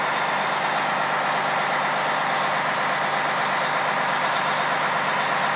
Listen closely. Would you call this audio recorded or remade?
recorded